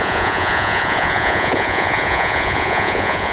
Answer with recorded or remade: remade